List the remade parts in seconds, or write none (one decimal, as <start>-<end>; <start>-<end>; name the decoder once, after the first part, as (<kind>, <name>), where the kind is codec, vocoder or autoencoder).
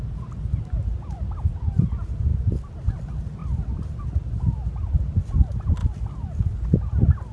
2.3-2.8 (vocoder, BigVGAN v2); 5.8-6.5